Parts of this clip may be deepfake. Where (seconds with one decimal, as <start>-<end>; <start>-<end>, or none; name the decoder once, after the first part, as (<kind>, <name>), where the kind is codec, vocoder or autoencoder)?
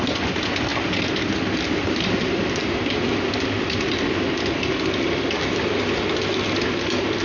none